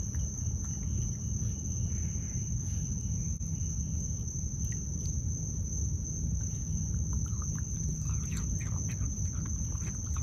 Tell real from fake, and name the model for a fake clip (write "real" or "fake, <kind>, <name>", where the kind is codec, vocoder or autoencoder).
real